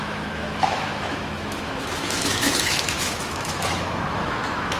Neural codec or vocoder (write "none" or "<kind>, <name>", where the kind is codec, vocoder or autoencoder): autoencoder, DAC-VAE